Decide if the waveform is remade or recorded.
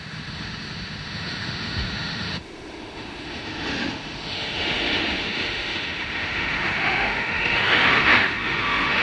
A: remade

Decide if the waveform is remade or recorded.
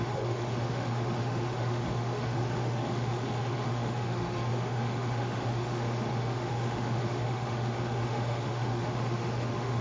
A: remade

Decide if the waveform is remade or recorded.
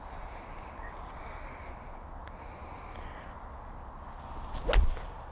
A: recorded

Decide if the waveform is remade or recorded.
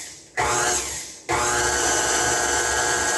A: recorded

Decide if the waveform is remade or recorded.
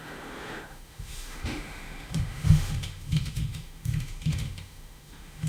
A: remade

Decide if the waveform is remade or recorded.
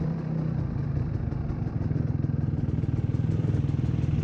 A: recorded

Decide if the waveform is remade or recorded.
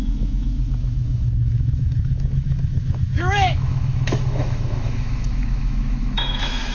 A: remade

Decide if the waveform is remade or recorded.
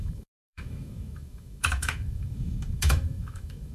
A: remade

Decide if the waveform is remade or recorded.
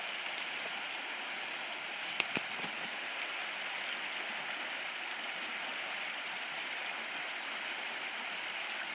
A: recorded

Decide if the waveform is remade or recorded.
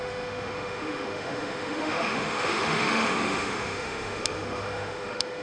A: remade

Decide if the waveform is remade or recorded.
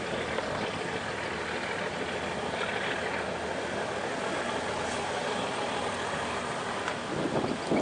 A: recorded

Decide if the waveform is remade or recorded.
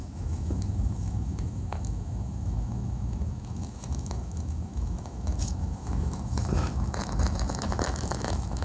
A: remade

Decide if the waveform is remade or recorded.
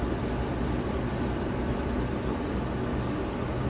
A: recorded